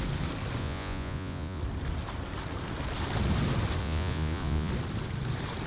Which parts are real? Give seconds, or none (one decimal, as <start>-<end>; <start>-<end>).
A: 0.0-0.6; 1.6-3.8; 4.7-5.7